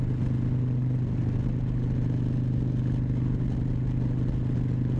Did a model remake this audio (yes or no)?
no